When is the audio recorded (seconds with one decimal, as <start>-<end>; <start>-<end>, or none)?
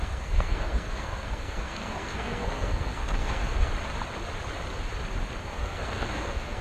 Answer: 3.7-5.4